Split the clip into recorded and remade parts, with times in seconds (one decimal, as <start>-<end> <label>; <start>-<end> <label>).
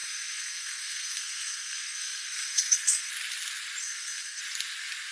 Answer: 0.0-3.1 remade; 3.1-3.8 recorded; 3.8-4.4 remade; 4.4-5.1 recorded